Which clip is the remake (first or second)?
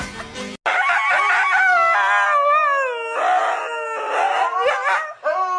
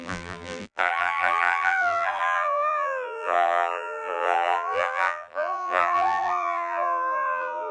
second